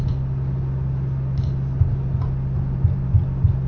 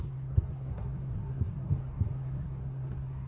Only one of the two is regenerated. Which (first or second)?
second